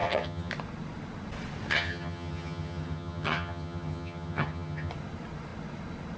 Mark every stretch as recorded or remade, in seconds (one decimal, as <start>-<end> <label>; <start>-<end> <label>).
0.0-0.5 remade; 0.5-1.7 recorded; 1.7-4.9 remade; 4.9-6.2 recorded